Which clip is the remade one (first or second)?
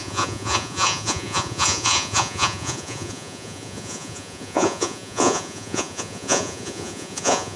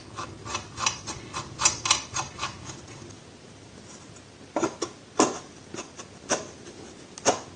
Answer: first